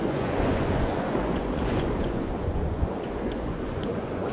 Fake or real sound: fake